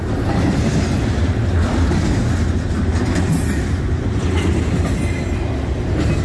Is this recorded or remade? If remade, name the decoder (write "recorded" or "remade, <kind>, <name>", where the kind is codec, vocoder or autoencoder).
recorded